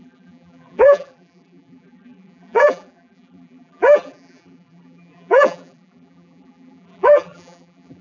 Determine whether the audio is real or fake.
fake